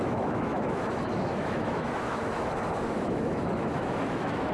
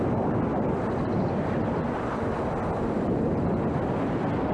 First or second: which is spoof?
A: first